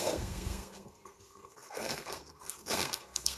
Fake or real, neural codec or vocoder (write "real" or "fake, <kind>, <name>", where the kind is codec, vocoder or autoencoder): fake, codec, SNAC